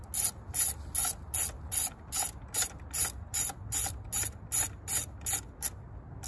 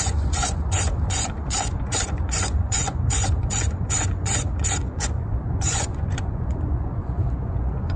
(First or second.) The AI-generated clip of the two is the second